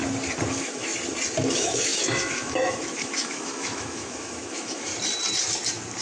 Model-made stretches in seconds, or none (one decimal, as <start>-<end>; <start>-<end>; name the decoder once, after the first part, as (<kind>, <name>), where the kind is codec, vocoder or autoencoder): 0.5-0.9 (autoencoder, DAC-VAE); 1.4-4.9